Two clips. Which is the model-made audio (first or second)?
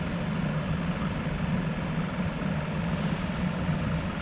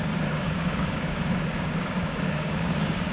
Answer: second